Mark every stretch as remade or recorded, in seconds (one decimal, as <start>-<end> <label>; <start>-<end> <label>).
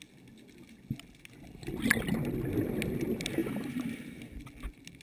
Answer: 0.0-3.4 recorded; 3.4-4.3 remade; 4.3-5.0 recorded